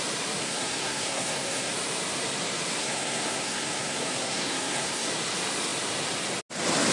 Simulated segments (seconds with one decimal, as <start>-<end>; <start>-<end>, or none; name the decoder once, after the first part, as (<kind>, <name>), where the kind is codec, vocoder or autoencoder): 0.4-1.7 (codec, SNAC); 2.8-5.1